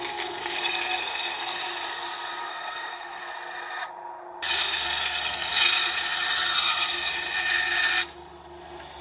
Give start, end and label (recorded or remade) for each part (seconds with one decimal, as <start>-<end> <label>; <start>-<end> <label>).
0.0-1.6 remade; 1.6-2.4 recorded; 2.4-3.2 remade; 3.2-4.6 recorded; 4.6-5.5 remade; 5.5-9.0 recorded